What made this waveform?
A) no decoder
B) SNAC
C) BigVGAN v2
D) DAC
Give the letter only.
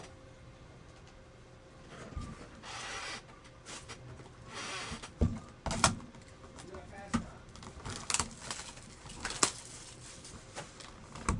A